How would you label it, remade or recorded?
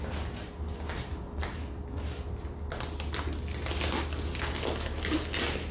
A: recorded